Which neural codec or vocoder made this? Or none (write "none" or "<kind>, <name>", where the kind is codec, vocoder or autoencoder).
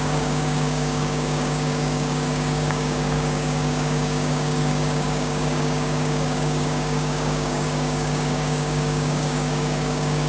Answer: codec, DAC